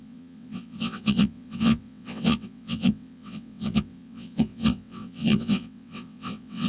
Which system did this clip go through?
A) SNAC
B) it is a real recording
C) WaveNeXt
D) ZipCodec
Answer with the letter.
C